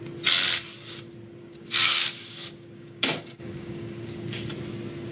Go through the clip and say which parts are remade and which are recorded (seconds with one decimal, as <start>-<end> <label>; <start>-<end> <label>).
0.0-1.4 recorded; 1.4-4.5 remade; 4.5-5.1 recorded